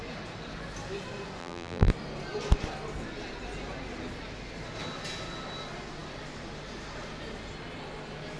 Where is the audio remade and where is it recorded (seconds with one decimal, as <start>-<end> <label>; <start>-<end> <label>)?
0.0-1.4 recorded; 1.4-1.9 remade; 1.9-8.4 recorded